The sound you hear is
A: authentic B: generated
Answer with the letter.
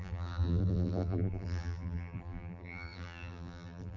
B